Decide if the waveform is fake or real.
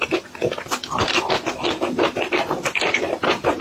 real